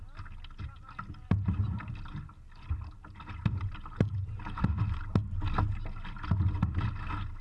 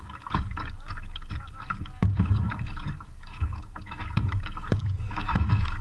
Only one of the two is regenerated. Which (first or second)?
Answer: second